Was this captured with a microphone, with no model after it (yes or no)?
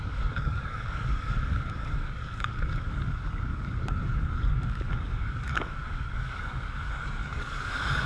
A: no